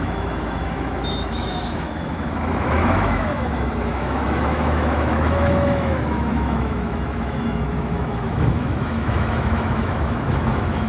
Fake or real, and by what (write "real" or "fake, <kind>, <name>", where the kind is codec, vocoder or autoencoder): fake, autoencoder, DAC-VAE